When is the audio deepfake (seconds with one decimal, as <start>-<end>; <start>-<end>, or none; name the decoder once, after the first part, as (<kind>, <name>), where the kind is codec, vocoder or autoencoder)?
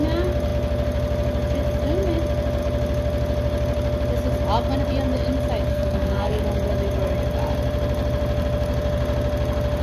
5.7-6.4 (codec, SNAC)